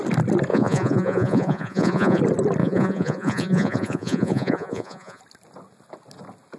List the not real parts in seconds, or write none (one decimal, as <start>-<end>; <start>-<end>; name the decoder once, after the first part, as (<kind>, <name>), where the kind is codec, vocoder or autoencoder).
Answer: 0.5-2.2 (vocoder, Vocos); 2.6-5.2